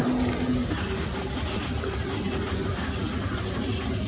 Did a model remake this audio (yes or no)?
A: no